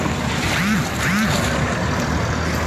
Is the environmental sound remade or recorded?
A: recorded